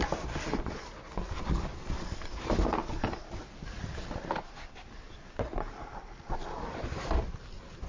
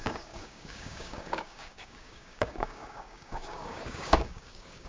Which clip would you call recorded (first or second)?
first